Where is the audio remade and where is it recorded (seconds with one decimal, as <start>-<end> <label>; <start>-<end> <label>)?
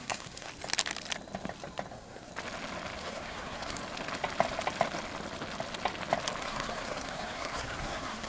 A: 0.0-0.5 remade; 0.5-1.9 recorded; 1.9-2.3 remade; 2.3-3.0 recorded; 3.0-3.8 remade; 3.8-6.4 recorded; 6.4-8.3 remade